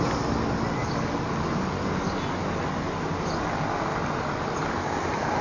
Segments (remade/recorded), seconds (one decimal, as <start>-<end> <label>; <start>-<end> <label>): 0.0-5.4 recorded